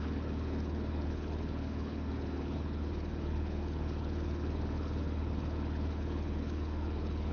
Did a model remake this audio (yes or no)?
yes